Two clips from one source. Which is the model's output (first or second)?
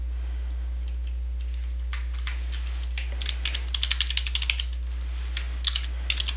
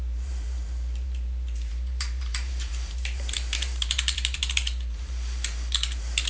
second